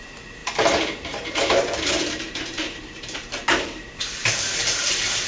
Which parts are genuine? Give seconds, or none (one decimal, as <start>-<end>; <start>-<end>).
none